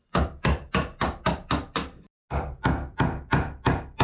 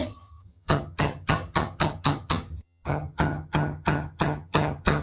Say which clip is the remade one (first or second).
second